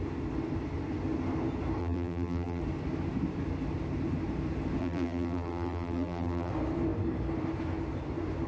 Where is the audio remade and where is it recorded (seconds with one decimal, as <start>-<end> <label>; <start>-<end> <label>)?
0.0-1.8 recorded; 1.8-2.6 remade; 2.6-4.8 recorded; 4.8-6.5 remade; 6.5-8.5 recorded